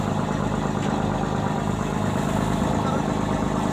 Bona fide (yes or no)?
yes